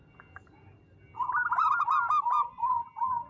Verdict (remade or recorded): recorded